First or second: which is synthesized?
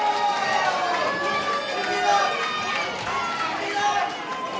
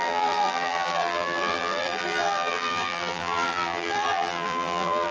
second